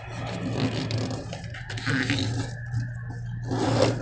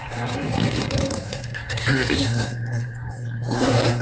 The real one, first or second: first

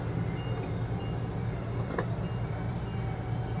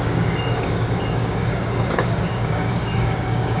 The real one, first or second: first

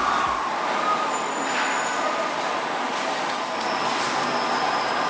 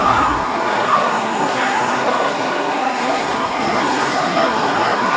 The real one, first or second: first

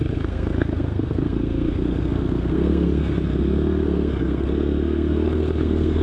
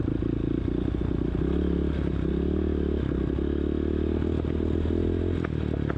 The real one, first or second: second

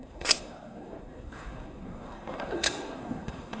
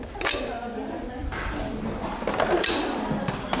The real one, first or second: second